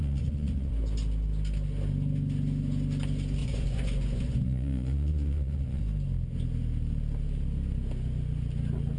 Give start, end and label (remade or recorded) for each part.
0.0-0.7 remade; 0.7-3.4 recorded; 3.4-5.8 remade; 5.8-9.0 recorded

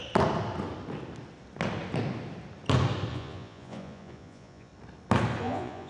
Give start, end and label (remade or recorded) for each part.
0.0-3.1 recorded; 3.1-4.7 remade; 4.7-5.4 recorded; 5.4-5.9 remade

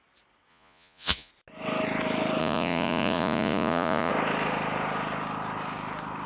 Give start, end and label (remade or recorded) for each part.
0.0-0.5 recorded; 0.5-1.3 remade; 1.3-2.4 recorded; 2.4-4.1 remade; 4.1-6.3 recorded

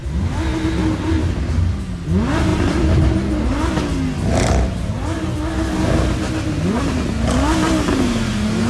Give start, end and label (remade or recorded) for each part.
0.0-8.7 recorded

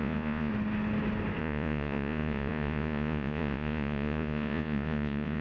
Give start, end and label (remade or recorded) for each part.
0.0-0.5 remade; 0.5-1.4 recorded; 1.4-5.4 remade